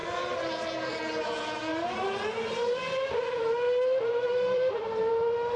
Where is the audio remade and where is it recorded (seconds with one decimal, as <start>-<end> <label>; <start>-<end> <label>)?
0.0-1.0 remade; 1.0-1.7 recorded; 1.7-5.1 remade; 5.1-5.6 recorded